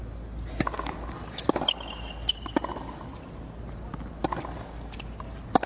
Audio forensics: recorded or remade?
recorded